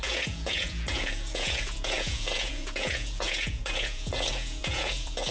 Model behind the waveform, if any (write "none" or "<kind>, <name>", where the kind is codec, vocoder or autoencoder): vocoder, Vocos